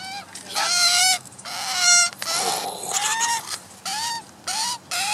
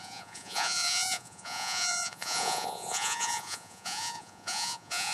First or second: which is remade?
second